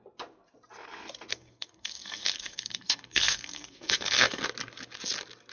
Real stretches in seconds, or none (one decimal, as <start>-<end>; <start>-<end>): 0.0-1.3; 4.4-5.5